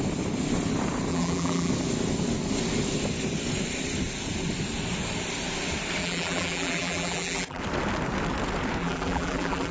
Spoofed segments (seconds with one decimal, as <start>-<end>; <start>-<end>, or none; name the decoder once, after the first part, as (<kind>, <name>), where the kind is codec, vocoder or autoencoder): 1.1-1.7 (vocoder, BigVGAN v2); 6.0-7.6; 8.8-9.7